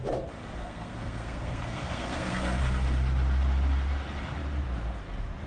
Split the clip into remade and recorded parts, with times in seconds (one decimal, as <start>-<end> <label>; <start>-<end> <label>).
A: 0.0-0.6 recorded; 0.6-2.6 remade; 2.6-5.5 recorded